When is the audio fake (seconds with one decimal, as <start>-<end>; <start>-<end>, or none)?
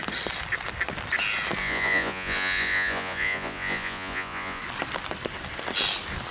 1.6-4.6